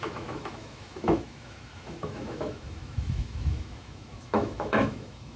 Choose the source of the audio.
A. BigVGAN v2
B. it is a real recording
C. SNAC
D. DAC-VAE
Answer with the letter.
D